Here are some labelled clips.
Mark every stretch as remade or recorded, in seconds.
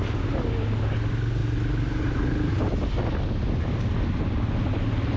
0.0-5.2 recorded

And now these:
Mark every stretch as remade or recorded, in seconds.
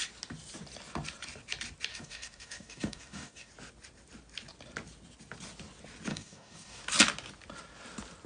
0.0-1.9 recorded; 1.9-3.5 remade; 3.5-6.1 recorded; 6.1-6.8 remade; 6.8-8.3 recorded